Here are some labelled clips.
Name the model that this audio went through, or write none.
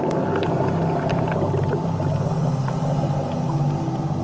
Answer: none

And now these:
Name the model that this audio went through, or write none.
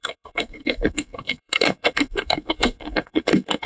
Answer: codec, SNAC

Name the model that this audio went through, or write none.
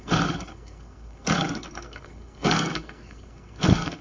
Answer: codec, SNAC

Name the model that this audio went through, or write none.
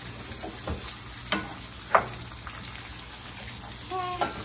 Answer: none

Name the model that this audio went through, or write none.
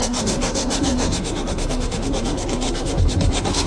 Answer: codec, SNAC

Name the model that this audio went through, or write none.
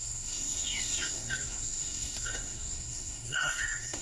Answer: codec, SNAC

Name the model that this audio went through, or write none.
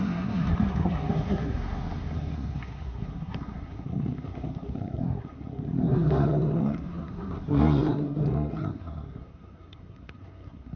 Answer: codec, SNAC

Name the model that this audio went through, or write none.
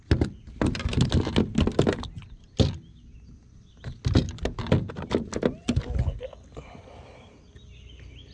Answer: none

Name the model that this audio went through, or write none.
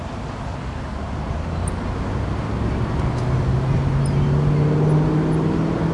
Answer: none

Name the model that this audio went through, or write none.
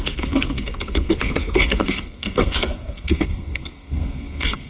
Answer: codec, SNAC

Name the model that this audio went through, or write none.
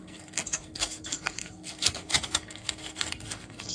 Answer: codec, SNAC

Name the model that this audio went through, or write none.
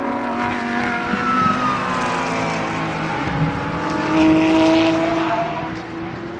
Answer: none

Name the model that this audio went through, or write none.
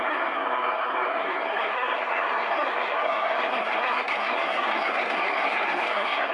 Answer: codec, SNAC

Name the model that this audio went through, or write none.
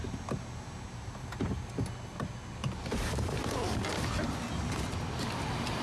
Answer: none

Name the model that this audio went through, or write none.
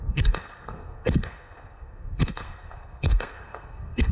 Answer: codec, SNAC